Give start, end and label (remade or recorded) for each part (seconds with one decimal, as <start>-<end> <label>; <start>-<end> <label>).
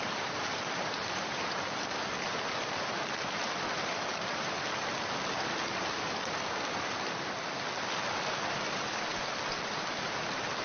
0.0-10.6 remade